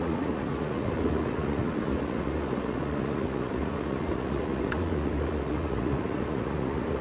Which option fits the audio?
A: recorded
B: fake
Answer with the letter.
B